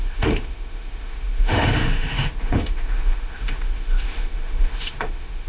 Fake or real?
fake